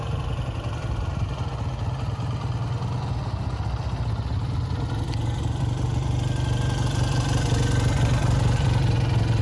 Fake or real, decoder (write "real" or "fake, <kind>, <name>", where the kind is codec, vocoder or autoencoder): real